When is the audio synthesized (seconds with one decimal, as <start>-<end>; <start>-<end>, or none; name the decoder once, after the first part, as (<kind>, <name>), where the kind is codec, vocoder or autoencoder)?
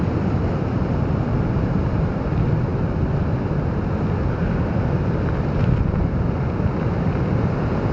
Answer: none